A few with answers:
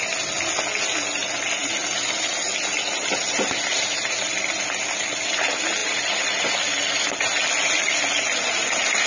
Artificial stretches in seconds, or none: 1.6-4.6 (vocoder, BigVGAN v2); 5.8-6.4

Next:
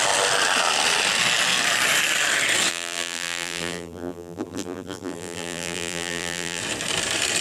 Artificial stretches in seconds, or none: 2.7-6.6 (vocoder, BigVGAN v2)